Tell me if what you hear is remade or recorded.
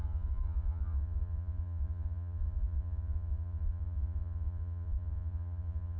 remade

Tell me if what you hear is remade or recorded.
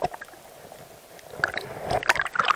recorded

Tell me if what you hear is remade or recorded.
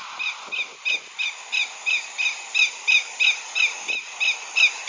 recorded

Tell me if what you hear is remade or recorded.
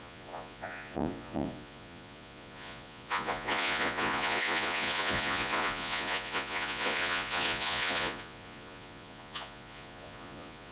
remade